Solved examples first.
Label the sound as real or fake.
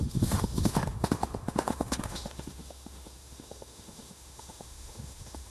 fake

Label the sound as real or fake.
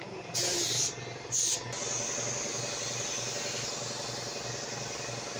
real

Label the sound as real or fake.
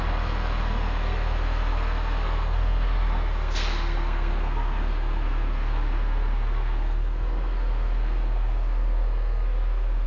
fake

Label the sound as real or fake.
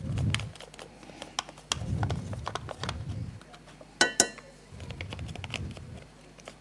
real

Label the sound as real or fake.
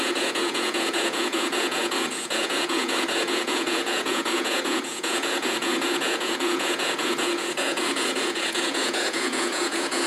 fake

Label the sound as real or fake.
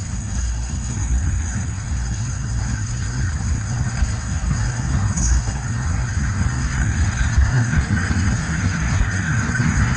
fake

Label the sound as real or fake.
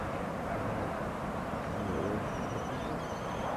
real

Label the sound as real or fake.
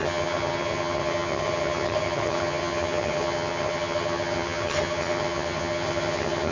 fake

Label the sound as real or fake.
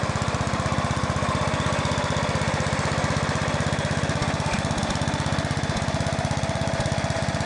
real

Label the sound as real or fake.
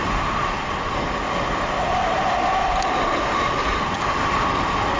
real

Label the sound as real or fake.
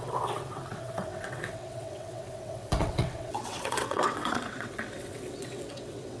fake